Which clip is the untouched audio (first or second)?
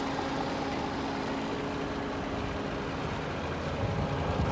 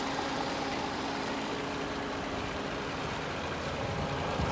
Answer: first